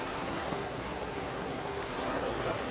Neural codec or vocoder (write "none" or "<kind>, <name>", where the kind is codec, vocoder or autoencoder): codec, SNAC